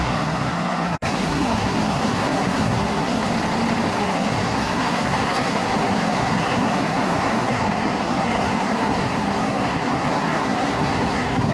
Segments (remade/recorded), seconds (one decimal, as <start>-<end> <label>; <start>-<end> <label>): 0.0-3.3 remade; 3.3-3.9 recorded; 3.9-11.5 remade